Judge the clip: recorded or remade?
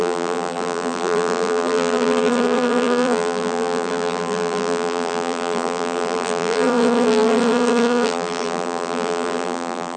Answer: remade